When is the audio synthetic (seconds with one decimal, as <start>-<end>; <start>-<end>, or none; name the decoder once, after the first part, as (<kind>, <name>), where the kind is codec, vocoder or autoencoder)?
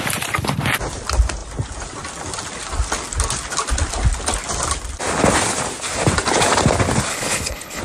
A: 7.1-7.8 (codec, HILCodec)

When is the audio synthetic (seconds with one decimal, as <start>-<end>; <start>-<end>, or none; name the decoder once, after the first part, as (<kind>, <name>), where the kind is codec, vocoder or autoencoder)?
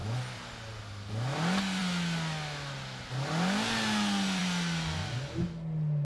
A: none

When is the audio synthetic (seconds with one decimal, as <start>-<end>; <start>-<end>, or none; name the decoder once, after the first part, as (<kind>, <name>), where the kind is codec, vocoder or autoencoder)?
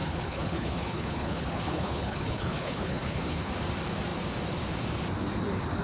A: 0.0-3.5 (codec, HILCodec)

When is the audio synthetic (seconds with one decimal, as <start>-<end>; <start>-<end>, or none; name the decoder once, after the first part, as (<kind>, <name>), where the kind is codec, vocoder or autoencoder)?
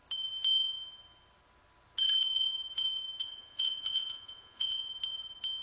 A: 3.2-4.9 (vocoder, Vocos)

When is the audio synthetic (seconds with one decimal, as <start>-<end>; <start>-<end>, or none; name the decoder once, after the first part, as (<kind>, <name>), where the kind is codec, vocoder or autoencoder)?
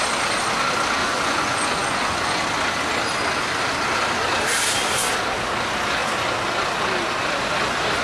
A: 1.0-2.4 (vocoder, Vocos)